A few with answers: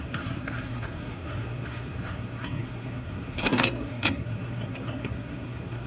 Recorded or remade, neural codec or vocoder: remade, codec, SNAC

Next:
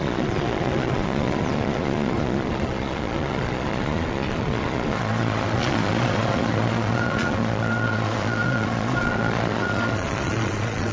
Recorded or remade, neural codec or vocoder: remade, vocoder, Vocos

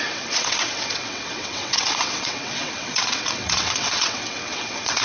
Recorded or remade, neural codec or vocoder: remade, vocoder, WaveNeXt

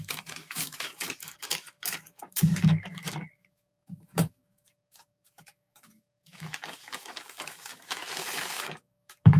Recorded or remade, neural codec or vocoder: remade, codec, DAC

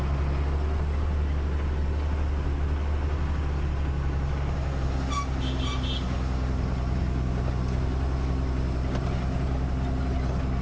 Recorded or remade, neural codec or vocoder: recorded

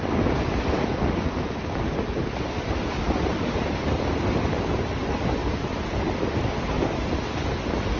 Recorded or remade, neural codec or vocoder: recorded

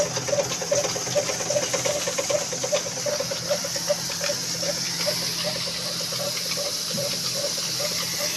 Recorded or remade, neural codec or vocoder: recorded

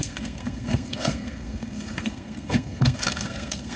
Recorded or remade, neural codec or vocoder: remade, codec, SNAC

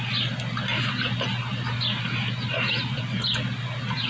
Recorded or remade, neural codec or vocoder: recorded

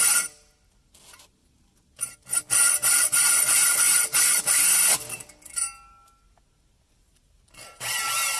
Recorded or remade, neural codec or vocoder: recorded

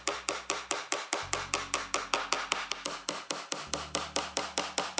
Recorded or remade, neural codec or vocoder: recorded